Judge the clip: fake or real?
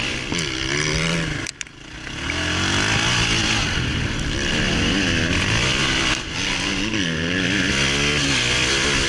real